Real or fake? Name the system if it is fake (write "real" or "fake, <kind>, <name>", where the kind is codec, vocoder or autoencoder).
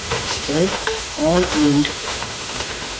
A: fake, autoencoder, DAC-VAE